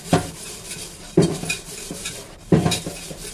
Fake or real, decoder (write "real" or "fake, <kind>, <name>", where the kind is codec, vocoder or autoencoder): fake, vocoder, BigVGAN v2